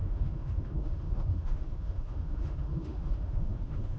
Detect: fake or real fake